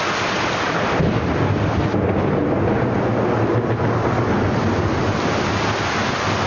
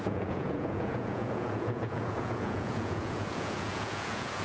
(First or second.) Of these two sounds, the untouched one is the first